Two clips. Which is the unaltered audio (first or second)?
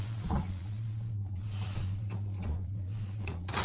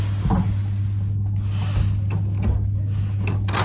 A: second